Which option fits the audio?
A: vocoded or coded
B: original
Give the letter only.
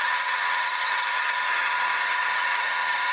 A